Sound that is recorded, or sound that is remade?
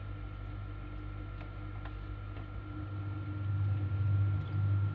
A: recorded